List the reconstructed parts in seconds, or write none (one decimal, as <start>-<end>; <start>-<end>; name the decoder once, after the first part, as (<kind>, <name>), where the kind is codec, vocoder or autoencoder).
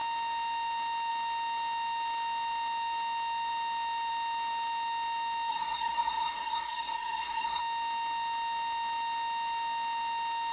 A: 5.5-7.6 (codec, SNAC)